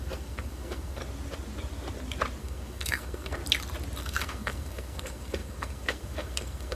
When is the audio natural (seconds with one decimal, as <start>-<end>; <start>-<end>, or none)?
1.0-2.4; 3.4-4.0